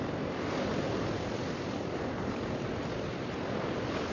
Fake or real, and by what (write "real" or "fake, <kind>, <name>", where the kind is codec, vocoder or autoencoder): real